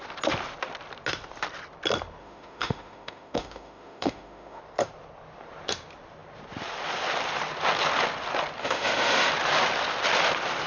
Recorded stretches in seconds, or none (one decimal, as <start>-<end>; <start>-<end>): 0.0-2.2; 4.6-8.6; 9.3-10.7